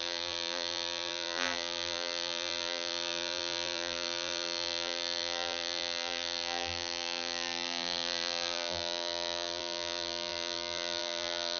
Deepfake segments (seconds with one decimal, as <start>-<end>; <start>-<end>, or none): 0.0-11.6